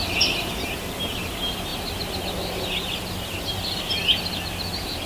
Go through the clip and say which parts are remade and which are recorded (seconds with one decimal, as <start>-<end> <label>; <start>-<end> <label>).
0.0-5.1 recorded